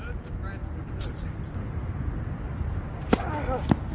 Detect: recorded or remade recorded